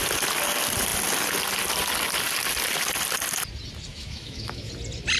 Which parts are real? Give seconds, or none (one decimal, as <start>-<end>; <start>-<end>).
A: 0.0-3.9; 4.7-5.2